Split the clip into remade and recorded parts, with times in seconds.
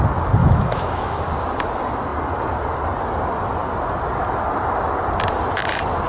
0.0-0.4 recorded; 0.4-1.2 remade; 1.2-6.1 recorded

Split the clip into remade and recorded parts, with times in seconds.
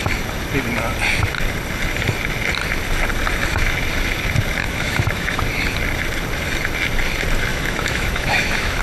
0.0-4.6 recorded; 4.6-5.4 remade; 5.4-7.5 recorded; 7.5-8.8 remade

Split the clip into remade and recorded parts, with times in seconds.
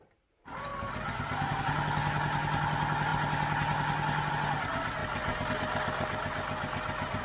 0.0-7.2 recorded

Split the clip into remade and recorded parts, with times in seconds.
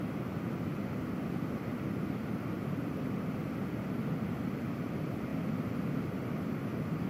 0.0-7.1 recorded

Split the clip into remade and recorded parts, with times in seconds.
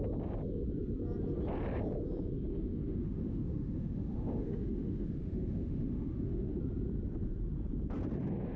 0.0-2.5 recorded; 2.5-6.6 remade; 6.6-8.6 recorded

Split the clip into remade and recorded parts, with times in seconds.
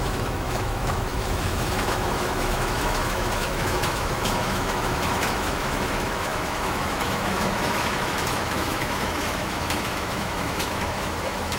0.0-11.6 remade